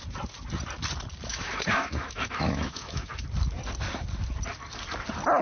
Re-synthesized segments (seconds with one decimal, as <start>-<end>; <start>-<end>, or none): 1.3-3.1